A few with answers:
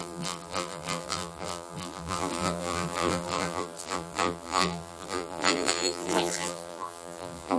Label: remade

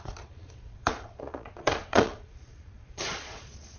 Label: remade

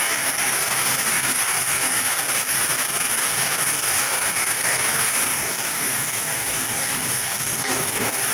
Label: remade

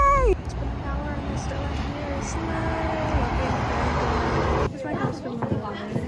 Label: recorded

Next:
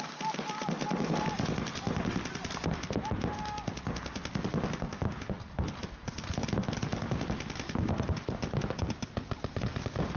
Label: recorded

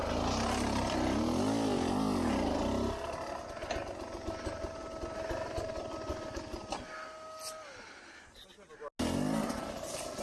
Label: recorded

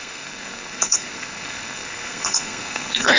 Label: remade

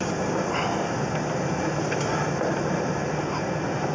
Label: recorded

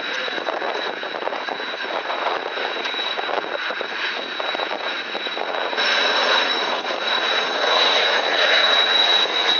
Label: remade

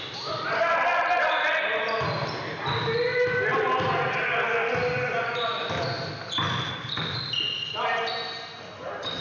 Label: recorded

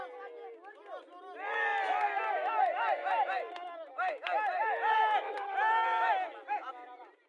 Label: recorded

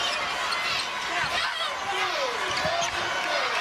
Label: recorded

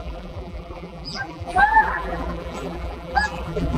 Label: remade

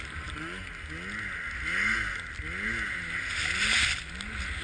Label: recorded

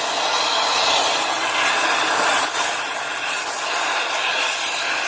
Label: recorded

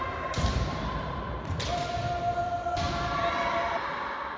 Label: recorded